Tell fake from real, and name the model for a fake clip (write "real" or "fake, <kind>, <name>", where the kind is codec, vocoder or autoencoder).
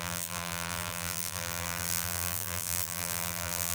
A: fake, vocoder, BigVGAN v2